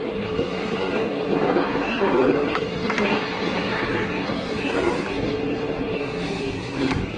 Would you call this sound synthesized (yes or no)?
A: yes